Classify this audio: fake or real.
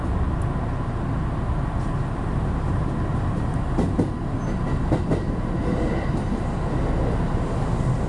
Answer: real